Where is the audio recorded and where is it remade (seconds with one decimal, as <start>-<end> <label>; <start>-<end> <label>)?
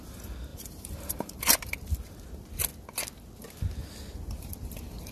0.0-0.5 recorded; 0.5-1.4 remade; 1.4-5.1 recorded